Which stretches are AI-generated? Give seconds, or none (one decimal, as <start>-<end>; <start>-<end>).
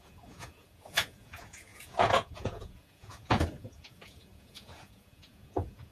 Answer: 0.0-5.9